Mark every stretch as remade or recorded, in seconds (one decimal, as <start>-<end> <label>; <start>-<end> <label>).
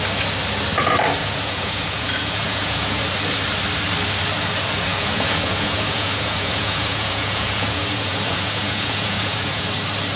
0.0-1.2 recorded; 1.2-3.0 remade; 3.0-4.9 recorded; 4.9-9.7 remade; 9.7-10.2 recorded